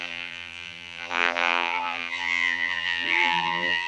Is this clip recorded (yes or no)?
no